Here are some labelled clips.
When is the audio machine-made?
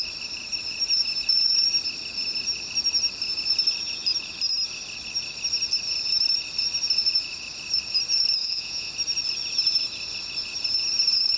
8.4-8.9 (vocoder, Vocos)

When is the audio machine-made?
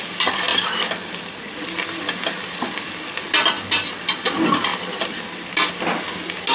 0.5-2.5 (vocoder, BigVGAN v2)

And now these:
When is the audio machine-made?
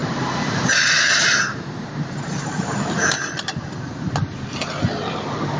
0.0-0.9 (vocoder, BigVGAN v2); 1.5-2.6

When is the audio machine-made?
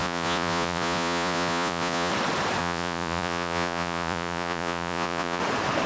0.0-2.1 (vocoder, Vocos); 2.6-5.4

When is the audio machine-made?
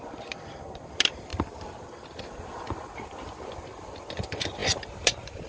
0.0-5.5 (vocoder, BigVGAN v2)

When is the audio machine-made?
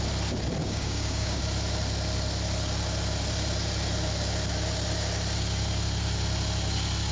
0.6-1.4 (codec, DAC)